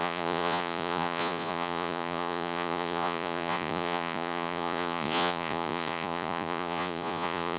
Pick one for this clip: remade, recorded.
remade